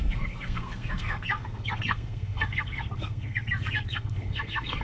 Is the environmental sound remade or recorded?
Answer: remade